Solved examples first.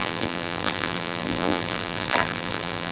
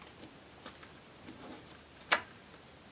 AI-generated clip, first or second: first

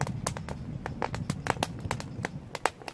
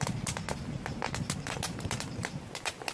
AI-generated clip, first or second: second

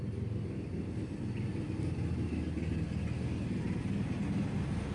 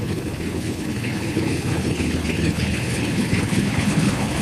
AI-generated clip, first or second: second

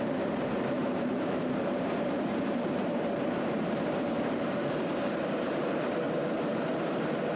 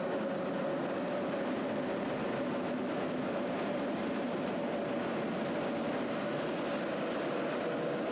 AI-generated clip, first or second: first